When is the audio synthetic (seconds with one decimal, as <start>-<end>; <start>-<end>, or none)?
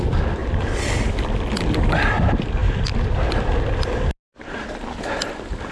none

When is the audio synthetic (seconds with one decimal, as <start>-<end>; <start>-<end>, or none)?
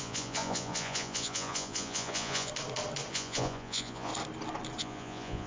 0.0-2.5; 3.1-4.1; 4.8-5.5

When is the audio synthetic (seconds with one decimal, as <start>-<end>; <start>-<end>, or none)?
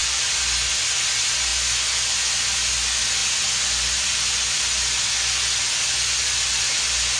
none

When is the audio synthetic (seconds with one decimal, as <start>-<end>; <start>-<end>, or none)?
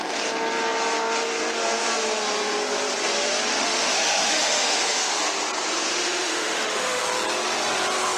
3.5-5.2; 5.9-7.0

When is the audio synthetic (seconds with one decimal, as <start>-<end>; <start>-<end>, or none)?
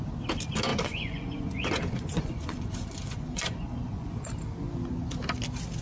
0.7-4.2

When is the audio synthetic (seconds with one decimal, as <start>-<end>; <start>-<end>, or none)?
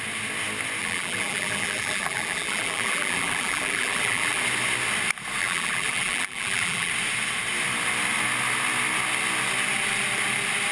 0.8-4.4; 5.4-6.9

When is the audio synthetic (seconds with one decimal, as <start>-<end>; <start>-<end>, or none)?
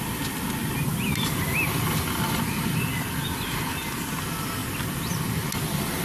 none